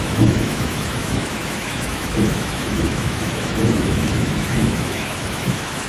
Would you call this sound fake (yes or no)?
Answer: yes